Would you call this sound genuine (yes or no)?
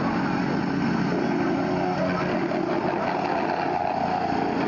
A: yes